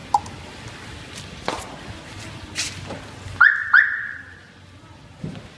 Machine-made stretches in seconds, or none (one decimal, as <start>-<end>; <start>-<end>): none